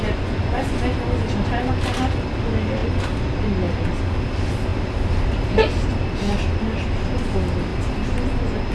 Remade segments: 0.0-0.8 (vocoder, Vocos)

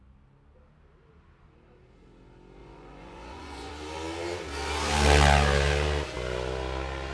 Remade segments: 2.6-3.7 (vocoder, Vocos)

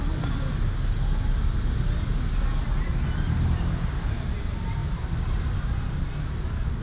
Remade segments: none

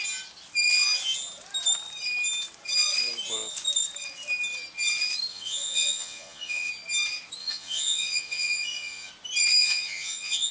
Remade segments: 5.3-6.7 (vocoder, Vocos); 7.4-9.1; 9.6-10.5

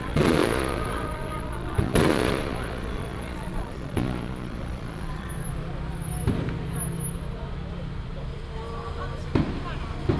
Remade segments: 0.0-5.3 (vocoder, Vocos)

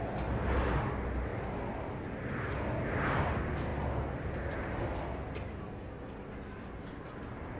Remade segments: none